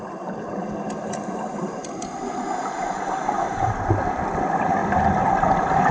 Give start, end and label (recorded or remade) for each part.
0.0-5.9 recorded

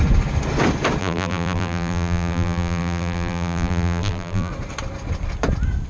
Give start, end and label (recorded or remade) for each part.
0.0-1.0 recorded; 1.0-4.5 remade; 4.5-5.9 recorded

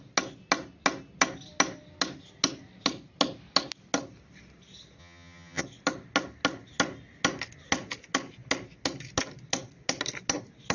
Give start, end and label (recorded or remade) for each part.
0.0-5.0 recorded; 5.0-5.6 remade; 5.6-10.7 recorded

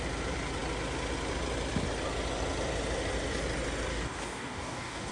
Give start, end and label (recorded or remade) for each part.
0.0-3.9 recorded; 3.9-5.1 remade